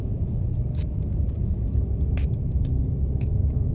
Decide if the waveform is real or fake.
real